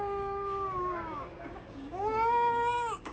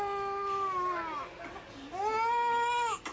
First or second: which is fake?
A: first